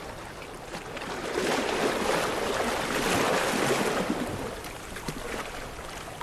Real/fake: real